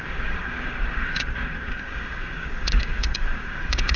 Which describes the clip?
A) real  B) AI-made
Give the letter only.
B